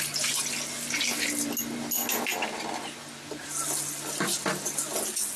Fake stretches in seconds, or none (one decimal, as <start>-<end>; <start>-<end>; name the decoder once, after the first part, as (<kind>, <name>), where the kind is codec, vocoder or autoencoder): none